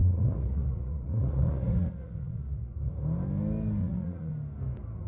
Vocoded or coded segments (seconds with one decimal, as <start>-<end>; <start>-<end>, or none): 0.0-2.9; 3.8-4.3